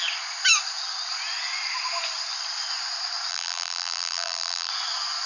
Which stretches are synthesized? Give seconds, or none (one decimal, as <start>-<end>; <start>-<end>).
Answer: 3.3-4.7